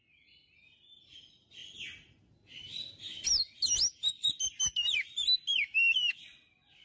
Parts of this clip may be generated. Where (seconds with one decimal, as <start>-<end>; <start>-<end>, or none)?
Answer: none